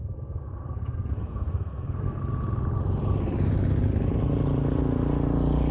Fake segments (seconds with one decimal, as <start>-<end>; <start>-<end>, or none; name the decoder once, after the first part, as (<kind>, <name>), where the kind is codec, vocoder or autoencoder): 0.0-2.2 (codec, SNAC)